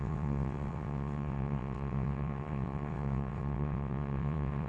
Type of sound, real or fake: fake